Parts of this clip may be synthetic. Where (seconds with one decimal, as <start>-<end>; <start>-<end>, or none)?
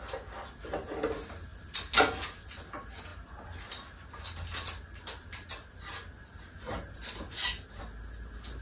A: none